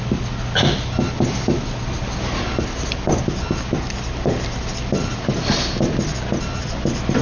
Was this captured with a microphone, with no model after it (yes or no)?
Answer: yes